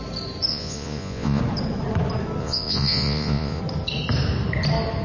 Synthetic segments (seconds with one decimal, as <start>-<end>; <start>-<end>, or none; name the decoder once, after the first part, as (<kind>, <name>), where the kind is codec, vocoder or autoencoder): 0.5-1.4 (vocoder, Vocos); 2.4-3.6

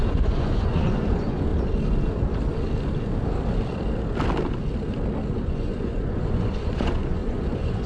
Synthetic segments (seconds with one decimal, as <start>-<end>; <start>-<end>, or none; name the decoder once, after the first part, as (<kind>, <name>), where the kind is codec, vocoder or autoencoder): 0.0-1.5 (vocoder, Vocos); 5.3-7.9

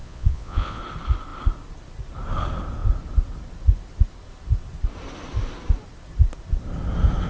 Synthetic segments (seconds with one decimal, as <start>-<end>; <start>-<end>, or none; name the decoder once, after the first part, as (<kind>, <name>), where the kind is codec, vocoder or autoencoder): 0.0-0.8 (vocoder, Vocos)

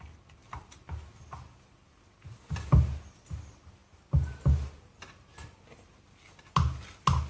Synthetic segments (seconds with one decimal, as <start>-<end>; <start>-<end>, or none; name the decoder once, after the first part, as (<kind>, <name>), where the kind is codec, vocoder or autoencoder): none

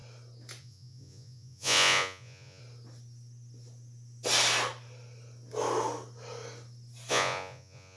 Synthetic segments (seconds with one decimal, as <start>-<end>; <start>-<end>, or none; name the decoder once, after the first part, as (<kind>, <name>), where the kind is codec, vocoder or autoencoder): 0.6-2.6 (vocoder, Vocos); 7.1-8.0